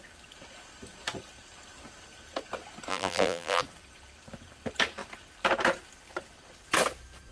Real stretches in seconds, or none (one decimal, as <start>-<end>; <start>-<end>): 0.0-2.9; 3.6-7.3